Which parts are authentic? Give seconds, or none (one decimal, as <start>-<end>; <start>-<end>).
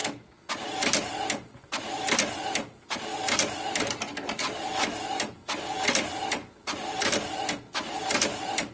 0.0-8.7